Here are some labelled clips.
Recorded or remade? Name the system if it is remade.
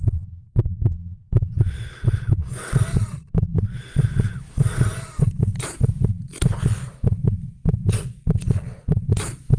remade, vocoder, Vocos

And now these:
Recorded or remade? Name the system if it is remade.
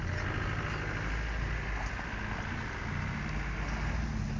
recorded